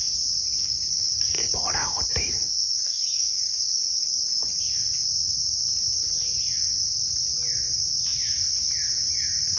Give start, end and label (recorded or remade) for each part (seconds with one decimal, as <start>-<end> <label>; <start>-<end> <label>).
0.0-0.6 recorded; 0.6-2.0 remade; 2.0-2.4 recorded; 2.4-4.6 remade; 4.6-9.6 recorded